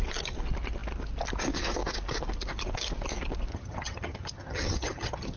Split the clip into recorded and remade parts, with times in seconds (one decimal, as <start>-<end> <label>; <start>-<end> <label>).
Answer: 0.0-3.5 recorded; 3.5-5.4 remade